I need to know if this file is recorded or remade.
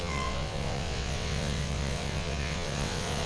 remade